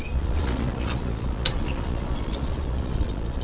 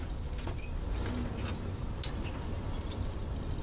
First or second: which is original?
second